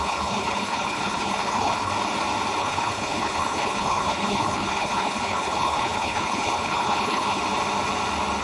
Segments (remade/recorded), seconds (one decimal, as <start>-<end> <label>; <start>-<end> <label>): 0.0-1.9 remade; 1.9-2.6 recorded; 2.6-7.4 remade; 7.4-8.4 recorded